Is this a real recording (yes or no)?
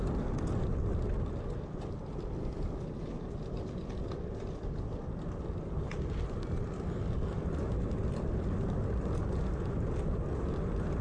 yes